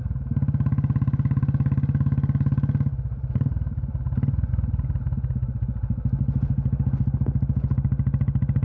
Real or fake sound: real